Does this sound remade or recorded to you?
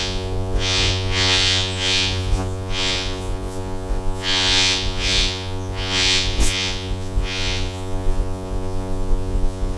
remade